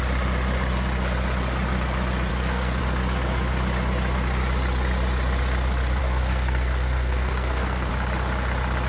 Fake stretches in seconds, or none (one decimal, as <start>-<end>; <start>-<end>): 2.3-2.8; 6.0-7.9